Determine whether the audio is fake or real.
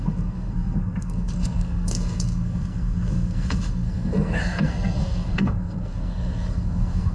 fake